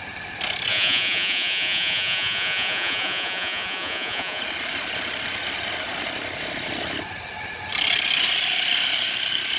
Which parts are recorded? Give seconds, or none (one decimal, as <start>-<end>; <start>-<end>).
0.0-0.7; 4.4-9.6